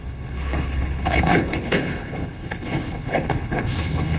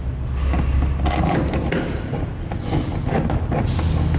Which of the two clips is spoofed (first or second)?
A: first